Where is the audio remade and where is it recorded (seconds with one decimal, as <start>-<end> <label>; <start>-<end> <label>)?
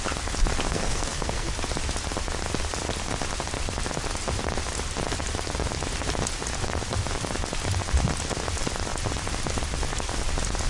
0.0-0.7 recorded; 0.7-1.5 remade; 1.5-10.7 recorded